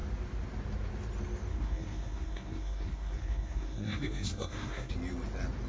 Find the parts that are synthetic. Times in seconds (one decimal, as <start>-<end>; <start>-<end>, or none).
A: 1.5-4.9